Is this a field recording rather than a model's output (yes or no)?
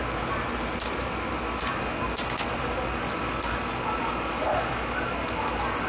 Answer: yes